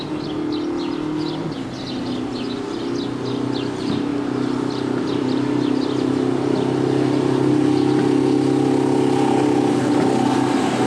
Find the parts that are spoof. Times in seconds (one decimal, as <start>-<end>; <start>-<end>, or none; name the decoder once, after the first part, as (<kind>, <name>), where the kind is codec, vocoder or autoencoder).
none